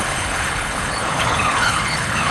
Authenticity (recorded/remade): remade